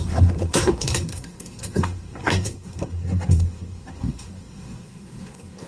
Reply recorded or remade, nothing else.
remade